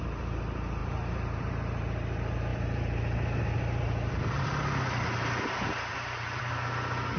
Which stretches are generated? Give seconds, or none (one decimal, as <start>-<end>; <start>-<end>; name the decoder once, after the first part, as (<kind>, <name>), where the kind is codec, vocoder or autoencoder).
0.8-1.5 (vocoder, BigVGAN v2); 2.5-5.3; 5.9-6.4